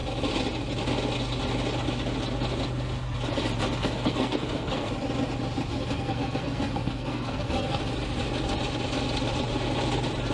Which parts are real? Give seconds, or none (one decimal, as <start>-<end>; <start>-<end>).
0.0-3.8; 4.9-5.7; 7.8-10.3